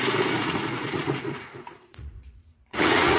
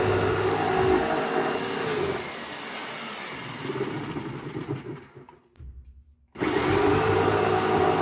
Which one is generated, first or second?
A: first